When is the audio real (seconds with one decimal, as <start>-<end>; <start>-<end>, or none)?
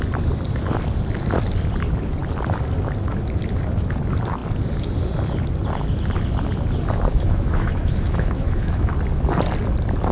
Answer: 0.0-7.1; 8.9-10.1